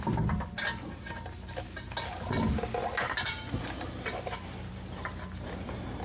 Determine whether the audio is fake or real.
real